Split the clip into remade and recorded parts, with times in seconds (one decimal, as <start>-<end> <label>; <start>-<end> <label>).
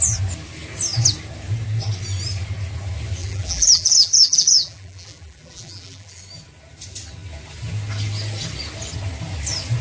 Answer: 0.0-3.2 recorded; 3.2-6.2 remade; 6.2-9.8 recorded